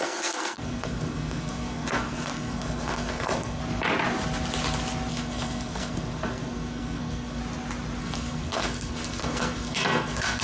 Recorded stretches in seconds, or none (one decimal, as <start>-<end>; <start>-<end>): 3.6-5.1; 7.4-8.0